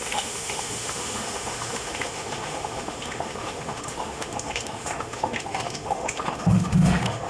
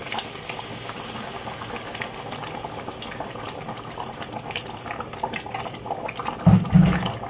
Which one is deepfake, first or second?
first